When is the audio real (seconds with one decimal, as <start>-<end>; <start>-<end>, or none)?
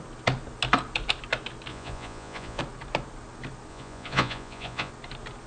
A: 0.0-1.7; 2.6-3.7; 4.9-5.5